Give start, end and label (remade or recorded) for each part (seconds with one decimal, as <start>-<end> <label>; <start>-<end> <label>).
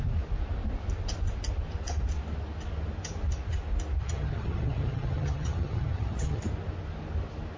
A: 0.0-4.0 recorded; 4.0-6.4 remade; 6.4-7.6 recorded